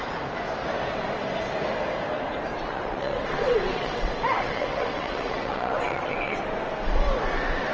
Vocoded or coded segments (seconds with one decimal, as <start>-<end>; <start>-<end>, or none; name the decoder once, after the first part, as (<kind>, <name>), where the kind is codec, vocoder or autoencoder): 2.5-6.4 (vocoder, WaveNeXt)